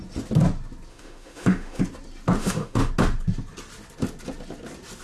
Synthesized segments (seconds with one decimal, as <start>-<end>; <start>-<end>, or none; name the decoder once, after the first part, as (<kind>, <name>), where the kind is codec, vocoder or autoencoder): 0.9-1.8 (autoencoder, DAC-VAE); 2.4-2.9